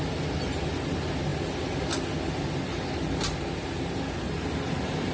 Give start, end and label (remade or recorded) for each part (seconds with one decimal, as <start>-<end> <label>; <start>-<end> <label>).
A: 0.0-5.1 recorded

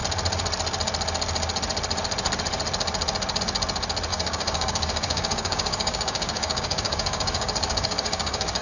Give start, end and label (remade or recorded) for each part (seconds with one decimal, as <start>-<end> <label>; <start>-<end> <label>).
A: 0.0-4.1 recorded; 4.1-8.6 remade

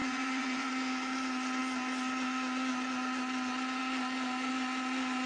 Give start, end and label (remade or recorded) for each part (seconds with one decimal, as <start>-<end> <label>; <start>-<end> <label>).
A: 0.0-0.7 remade; 0.7-5.3 recorded

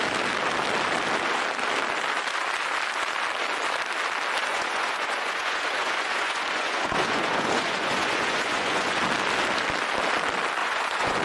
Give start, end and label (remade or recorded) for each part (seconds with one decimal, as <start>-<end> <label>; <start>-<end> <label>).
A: 0.0-4.5 recorded; 4.5-9.0 remade; 9.0-10.6 recorded; 10.6-11.2 remade

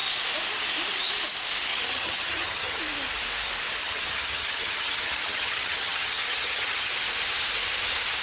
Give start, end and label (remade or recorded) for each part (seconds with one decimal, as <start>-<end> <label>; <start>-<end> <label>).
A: 0.0-1.7 recorded; 1.7-2.8 remade; 2.8-3.8 recorded; 3.8-6.9 remade; 6.9-8.2 recorded

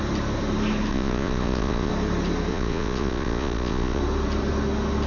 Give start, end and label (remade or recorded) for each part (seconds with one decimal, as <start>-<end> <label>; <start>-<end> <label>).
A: 0.0-0.9 recorded; 0.9-1.9 remade; 1.9-2.5 recorded; 2.5-4.0 remade; 4.0-5.1 recorded

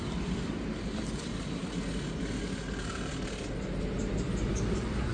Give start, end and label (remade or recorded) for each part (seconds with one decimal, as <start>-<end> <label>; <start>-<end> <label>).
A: 0.0-5.1 recorded

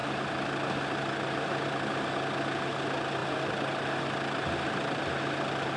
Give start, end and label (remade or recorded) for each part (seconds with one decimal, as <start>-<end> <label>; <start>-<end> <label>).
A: 0.0-5.8 recorded